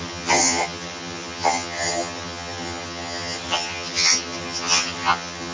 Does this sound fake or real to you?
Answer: fake